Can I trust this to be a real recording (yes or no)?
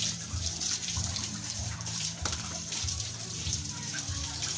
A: no